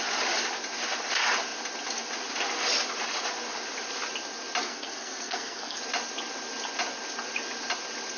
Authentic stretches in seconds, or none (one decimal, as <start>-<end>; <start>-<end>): 0.0-4.6; 5.8-8.2